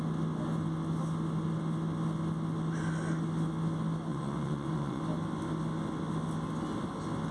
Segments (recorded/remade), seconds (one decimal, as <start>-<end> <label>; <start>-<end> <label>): 0.0-4.1 recorded; 4.1-5.0 remade; 5.0-7.3 recorded